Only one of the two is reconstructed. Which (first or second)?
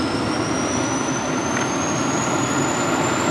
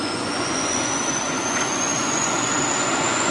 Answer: second